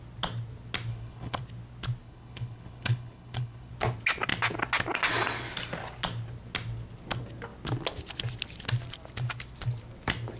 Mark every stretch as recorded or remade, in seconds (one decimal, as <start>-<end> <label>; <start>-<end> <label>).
0.0-0.9 recorded; 0.9-1.4 remade; 1.4-2.0 recorded; 2.0-3.7 remade; 3.7-10.4 recorded